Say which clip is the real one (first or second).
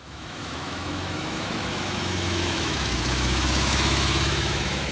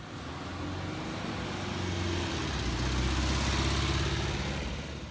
second